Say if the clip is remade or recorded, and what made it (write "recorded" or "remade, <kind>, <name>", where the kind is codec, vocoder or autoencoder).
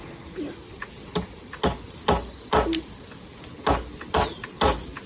recorded